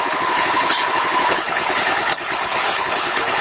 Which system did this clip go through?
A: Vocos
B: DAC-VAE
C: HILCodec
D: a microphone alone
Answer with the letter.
C